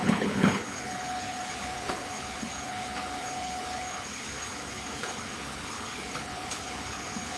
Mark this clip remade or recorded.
remade